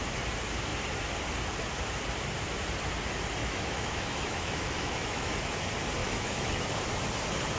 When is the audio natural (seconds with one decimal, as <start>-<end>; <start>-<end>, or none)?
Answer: 0.0-3.4; 5.6-6.0; 6.6-7.6